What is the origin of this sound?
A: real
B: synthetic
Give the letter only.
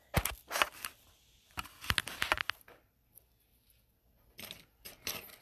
A